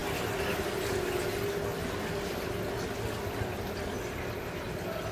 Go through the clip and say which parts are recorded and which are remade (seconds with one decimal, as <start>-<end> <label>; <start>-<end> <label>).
0.0-5.1 recorded